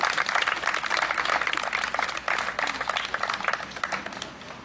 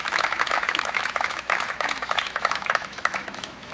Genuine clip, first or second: first